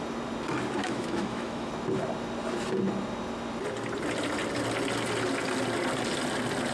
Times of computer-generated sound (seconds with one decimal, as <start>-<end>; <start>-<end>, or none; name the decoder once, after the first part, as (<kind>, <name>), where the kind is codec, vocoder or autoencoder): 0.8-1.7 (autoencoder, DAC-VAE)